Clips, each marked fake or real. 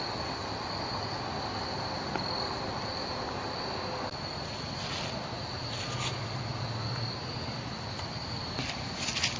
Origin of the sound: real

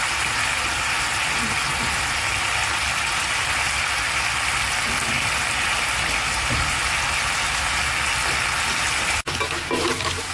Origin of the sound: real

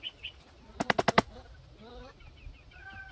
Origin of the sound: real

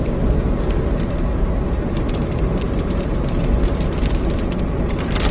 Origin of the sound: real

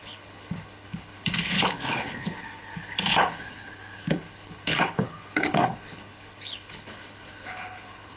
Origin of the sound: fake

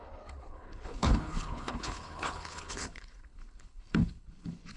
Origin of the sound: fake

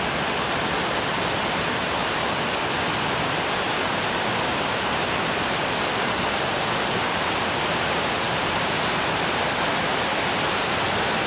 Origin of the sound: real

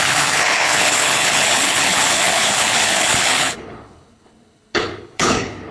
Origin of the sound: fake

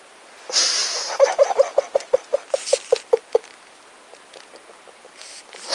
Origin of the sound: real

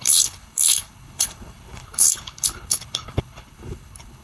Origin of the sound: fake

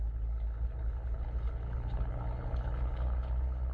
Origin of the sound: fake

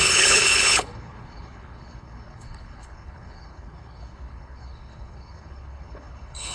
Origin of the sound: fake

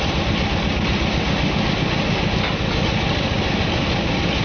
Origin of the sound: real